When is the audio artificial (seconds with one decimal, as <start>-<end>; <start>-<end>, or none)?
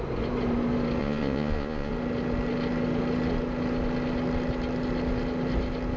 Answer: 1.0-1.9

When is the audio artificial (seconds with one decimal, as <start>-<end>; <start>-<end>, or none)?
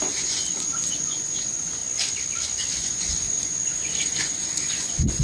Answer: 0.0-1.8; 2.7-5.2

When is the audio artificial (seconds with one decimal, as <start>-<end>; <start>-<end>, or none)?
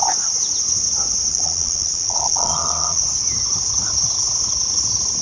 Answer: 1.3-3.0